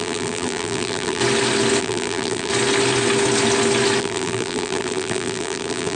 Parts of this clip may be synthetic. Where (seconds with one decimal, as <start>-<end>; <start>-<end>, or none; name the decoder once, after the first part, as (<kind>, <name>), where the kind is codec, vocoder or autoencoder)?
0.0-1.2 (vocoder, BigVGAN v2); 1.8-2.5; 4.0-6.0